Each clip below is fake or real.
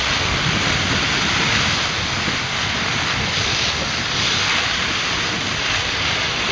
real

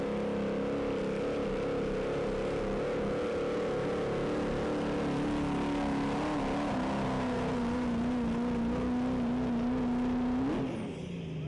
real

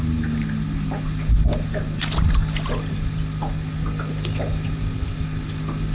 real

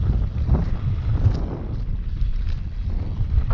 real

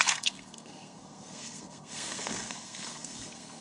fake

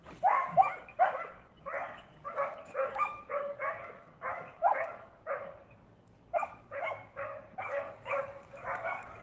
fake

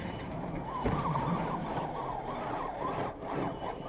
fake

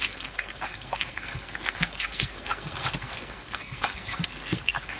fake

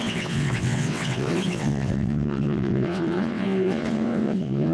fake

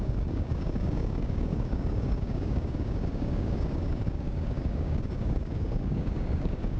fake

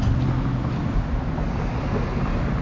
real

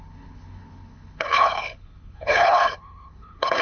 fake